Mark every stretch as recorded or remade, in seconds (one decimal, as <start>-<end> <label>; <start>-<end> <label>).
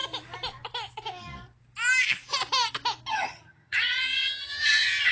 0.0-3.1 recorded; 3.1-5.1 remade